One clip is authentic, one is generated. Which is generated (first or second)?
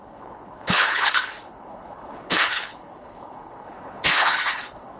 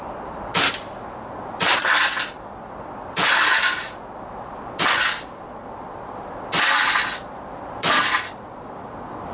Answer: first